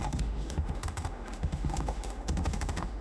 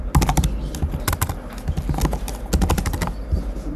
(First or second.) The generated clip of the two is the first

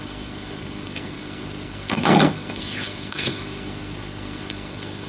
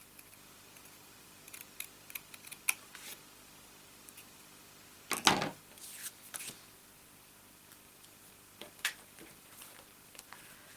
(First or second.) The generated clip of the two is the first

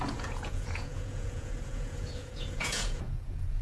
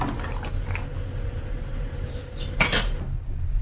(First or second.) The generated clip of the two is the first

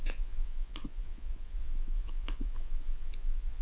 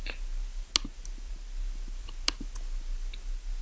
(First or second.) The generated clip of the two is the first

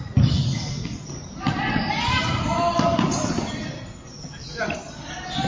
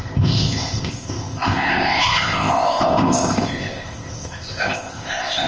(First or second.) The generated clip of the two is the second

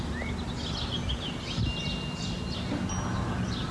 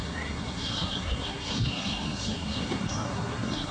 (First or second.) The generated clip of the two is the second